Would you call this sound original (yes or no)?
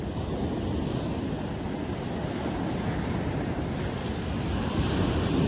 yes